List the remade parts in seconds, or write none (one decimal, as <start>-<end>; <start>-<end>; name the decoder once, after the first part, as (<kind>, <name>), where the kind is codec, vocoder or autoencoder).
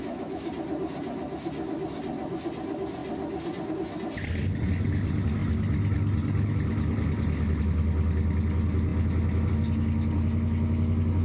0.0-0.5 (autoencoder, DAC-VAE)